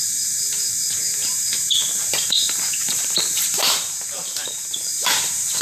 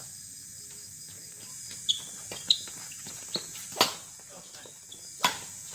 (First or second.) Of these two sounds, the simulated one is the first